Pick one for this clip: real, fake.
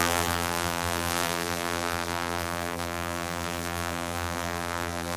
fake